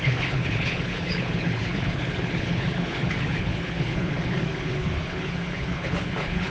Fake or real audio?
fake